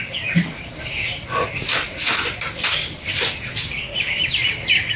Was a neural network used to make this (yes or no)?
no